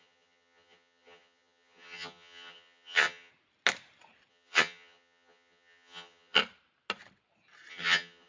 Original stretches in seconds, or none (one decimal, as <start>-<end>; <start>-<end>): 3.3-4.3; 6.4-7.7